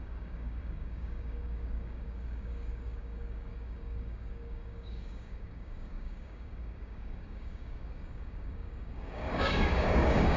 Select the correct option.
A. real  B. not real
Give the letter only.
B